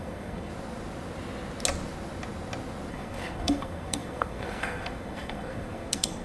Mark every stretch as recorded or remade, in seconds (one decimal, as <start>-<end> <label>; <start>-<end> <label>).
0.0-0.5 remade; 0.5-2.9 recorded; 2.9-6.2 remade